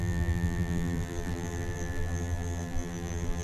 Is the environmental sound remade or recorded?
remade